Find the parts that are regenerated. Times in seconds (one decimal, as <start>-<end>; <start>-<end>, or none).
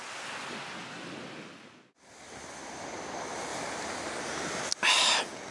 none